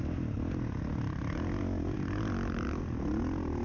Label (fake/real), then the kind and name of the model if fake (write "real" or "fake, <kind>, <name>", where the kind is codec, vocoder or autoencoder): real